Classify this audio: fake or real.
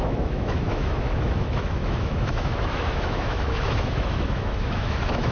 fake